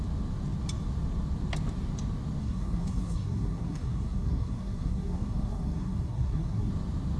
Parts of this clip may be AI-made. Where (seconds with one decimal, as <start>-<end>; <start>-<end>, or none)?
2.4-6.7